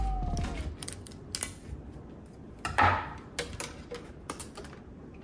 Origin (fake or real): real